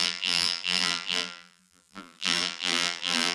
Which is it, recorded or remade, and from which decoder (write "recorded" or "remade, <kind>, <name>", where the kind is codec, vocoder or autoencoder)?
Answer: remade, vocoder, BigVGAN v2